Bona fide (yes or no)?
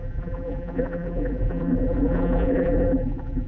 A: no